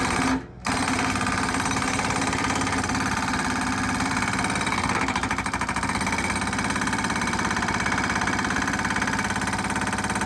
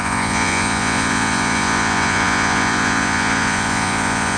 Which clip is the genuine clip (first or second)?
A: first